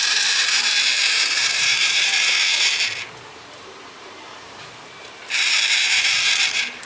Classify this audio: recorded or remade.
remade